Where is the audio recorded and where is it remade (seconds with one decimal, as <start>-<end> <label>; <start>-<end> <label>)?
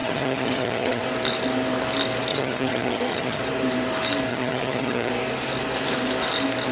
0.0-1.0 remade; 1.0-2.3 recorded; 2.3-3.4 remade; 3.4-4.3 recorded; 4.3-5.1 remade; 5.1-6.7 recorded